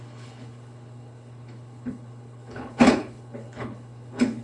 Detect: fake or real fake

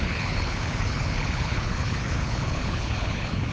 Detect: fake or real fake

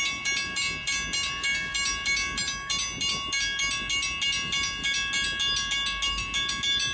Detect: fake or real real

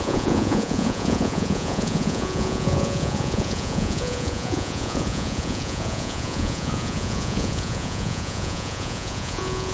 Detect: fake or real fake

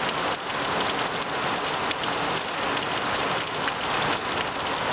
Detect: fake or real real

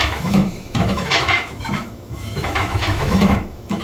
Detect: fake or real fake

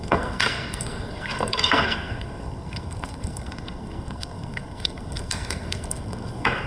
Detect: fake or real fake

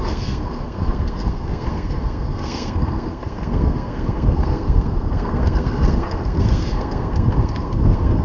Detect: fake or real fake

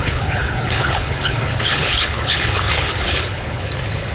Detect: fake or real fake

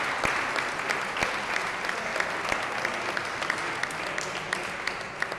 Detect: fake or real real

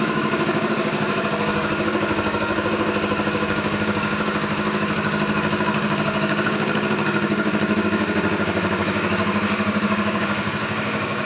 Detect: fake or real fake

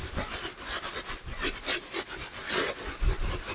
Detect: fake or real real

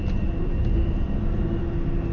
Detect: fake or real real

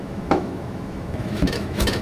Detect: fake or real fake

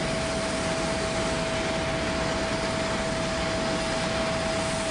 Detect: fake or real real